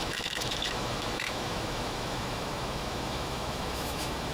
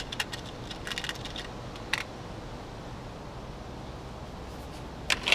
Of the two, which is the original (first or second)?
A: second